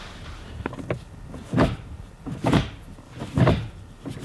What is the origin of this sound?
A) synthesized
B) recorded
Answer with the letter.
B